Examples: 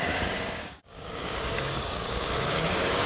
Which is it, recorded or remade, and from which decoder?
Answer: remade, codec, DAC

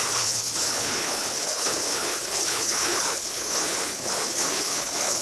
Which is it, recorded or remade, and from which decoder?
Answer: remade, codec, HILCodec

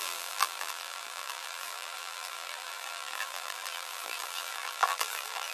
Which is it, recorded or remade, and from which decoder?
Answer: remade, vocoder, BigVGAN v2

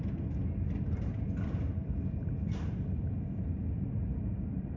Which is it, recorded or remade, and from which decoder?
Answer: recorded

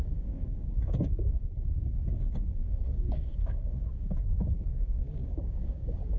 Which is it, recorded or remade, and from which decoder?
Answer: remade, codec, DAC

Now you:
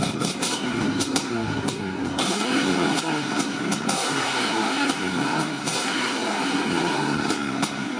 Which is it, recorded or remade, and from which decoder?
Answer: remade, codec, SNAC